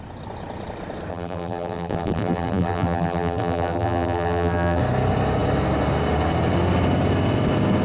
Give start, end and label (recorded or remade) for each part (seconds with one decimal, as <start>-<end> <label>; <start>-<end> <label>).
0.0-1.1 recorded; 1.1-4.8 remade; 4.8-7.8 recorded